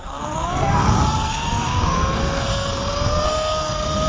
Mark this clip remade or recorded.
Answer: remade